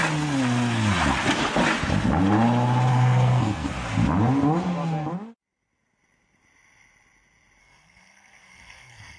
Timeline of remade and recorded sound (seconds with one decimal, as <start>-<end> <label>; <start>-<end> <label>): 0.0-2.9 recorded; 2.9-3.7 remade; 3.7-7.6 recorded; 7.6-9.2 remade